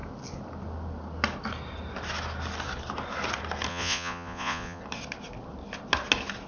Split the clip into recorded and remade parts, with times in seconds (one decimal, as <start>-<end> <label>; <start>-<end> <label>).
0.0-3.7 recorded; 3.7-4.8 remade; 4.8-6.5 recorded

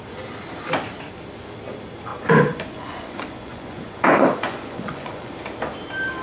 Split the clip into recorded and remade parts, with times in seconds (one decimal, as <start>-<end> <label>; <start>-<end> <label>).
0.0-2.1 recorded; 2.1-5.3 remade; 5.3-6.2 recorded

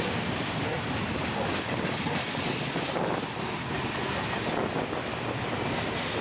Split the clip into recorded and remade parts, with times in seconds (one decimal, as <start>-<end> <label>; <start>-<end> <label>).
0.0-6.2 recorded

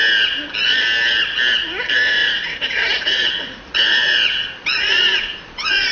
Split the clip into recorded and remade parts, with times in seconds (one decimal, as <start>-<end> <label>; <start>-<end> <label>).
0.0-2.2 recorded; 2.2-5.9 remade

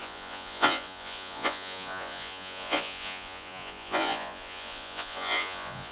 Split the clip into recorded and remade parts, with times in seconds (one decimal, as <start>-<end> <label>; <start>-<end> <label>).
0.0-5.9 remade

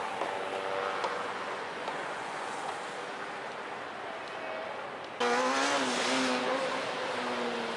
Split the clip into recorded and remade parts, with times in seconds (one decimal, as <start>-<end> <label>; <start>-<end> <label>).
0.0-1.0 recorded; 1.0-2.7 remade; 2.7-7.8 recorded